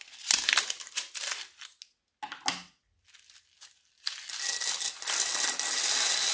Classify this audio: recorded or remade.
recorded